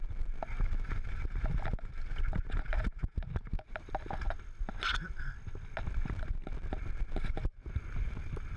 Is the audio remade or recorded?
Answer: recorded